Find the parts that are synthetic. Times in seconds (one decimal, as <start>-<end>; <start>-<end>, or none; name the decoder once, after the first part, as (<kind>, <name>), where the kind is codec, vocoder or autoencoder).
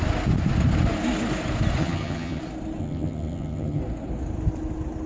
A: 1.8-2.4 (vocoder, HiFi-GAN); 2.8-3.8